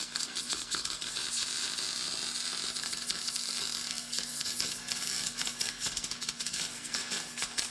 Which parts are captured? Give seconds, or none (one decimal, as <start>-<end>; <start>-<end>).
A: 1.2-2.8